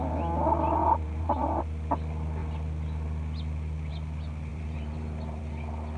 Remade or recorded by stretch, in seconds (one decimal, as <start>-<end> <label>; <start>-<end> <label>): 0.0-0.8 recorded; 0.8-1.6 remade; 1.6-4.5 recorded; 4.5-5.4 remade; 5.4-6.0 recorded